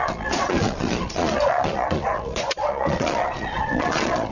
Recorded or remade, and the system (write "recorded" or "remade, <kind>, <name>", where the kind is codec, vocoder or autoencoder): remade, vocoder, Vocos